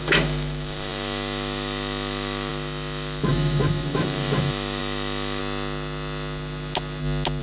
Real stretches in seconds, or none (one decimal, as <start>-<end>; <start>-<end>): 5.4-7.4